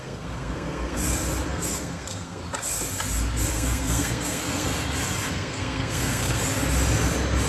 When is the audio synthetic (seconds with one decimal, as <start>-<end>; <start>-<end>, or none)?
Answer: 0.0-1.0; 1.5-2.4; 3.5-4.7; 5.3-6.4

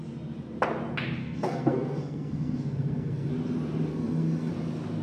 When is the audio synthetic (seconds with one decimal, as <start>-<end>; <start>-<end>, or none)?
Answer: 1.2-3.3; 3.9-4.5